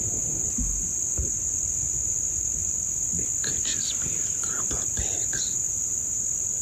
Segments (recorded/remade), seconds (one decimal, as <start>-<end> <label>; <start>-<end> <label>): 0.0-2.6 recorded; 2.6-3.1 remade; 3.1-3.7 recorded; 3.7-4.3 remade; 4.3-6.6 recorded